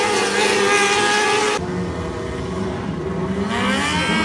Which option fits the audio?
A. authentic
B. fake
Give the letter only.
A